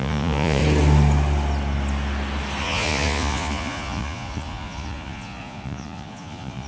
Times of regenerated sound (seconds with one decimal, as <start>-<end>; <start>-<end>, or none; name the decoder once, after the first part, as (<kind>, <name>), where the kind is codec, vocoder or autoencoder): 0.0-0.6 (vocoder, Vocos); 2.6-6.7